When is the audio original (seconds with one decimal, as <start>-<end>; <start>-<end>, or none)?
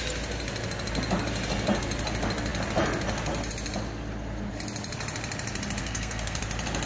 0.0-5.8; 6.4-6.9